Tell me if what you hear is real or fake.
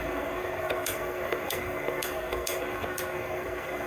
fake